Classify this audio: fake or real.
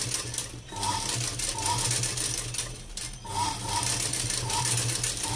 real